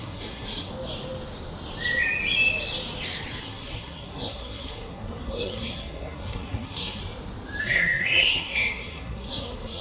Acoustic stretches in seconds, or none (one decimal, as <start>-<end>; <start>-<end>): 0.7-3.4; 7.0-7.6